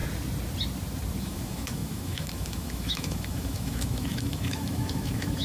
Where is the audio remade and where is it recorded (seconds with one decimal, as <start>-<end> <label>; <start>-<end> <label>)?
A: 0.0-1.2 recorded; 1.2-5.4 remade